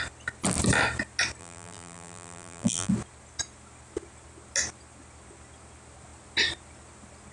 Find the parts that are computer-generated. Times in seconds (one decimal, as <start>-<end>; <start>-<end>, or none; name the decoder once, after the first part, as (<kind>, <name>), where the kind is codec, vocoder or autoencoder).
1.4-2.9 (vocoder, BigVGAN v2)